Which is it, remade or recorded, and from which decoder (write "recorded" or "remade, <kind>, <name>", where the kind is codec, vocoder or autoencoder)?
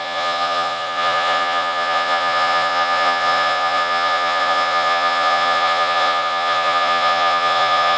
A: remade, vocoder, Vocos